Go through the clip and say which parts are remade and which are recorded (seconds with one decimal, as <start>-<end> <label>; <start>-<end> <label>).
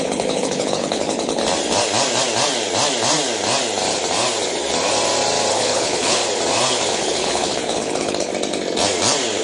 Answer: 0.0-1.4 remade; 1.4-5.5 recorded; 5.5-6.2 remade; 6.2-6.9 recorded; 6.9-8.3 remade; 8.3-9.4 recorded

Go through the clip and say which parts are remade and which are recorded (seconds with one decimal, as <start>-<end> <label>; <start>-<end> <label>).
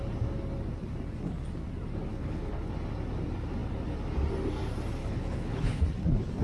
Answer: 0.0-2.1 recorded; 2.1-2.7 remade; 2.7-5.0 recorded; 5.0-5.8 remade; 5.8-6.4 recorded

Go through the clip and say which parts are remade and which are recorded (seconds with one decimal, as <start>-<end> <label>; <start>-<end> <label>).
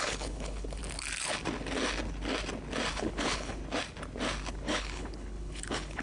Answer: 0.0-0.8 remade; 0.8-2.9 recorded; 2.9-3.6 remade; 3.6-4.5 recorded; 4.5-6.0 remade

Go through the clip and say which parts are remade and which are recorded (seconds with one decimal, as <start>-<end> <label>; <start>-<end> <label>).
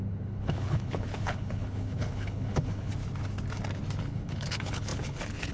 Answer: 0.0-2.9 remade; 2.9-4.0 recorded; 4.0-5.5 remade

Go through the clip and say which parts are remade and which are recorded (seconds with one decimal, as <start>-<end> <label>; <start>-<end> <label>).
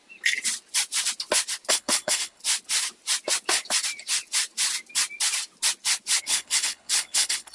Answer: 0.0-1.7 recorded; 1.7-2.4 remade; 2.4-6.2 recorded; 6.2-7.5 remade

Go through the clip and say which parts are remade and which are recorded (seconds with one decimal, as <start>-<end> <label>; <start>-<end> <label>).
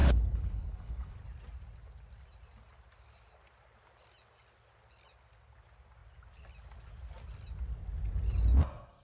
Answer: 0.0-1.1 remade; 1.1-9.0 recorded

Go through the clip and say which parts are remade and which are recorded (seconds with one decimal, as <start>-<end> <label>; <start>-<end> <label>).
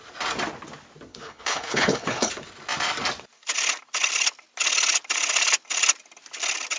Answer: 0.0-1.1 recorded; 1.1-2.3 remade; 2.3-6.8 recorded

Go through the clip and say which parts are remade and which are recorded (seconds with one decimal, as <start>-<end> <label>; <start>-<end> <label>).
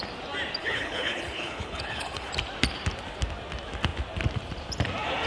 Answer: 0.0-0.6 recorded; 0.6-2.3 remade; 2.3-5.3 recorded